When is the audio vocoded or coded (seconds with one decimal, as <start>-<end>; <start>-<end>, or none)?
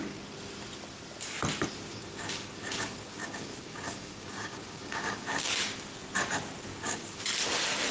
1.9-5.5; 6.7-7.2